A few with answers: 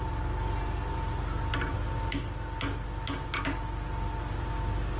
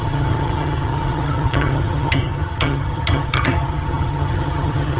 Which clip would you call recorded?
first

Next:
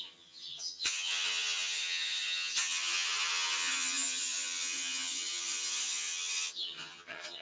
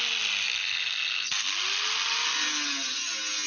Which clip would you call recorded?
second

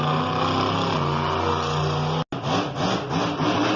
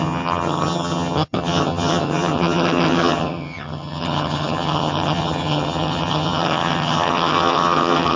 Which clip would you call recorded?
first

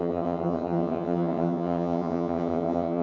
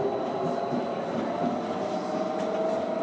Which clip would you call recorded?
second